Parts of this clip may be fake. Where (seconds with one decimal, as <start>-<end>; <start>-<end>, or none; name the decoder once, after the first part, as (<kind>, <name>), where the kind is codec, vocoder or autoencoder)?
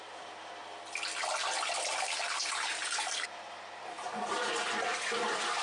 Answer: 0.0-0.6 (vocoder, BigVGAN v2); 2.4-4.9